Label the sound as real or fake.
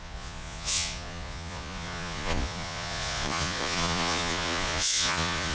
fake